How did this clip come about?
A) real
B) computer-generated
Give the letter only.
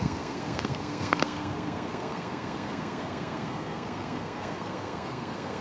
B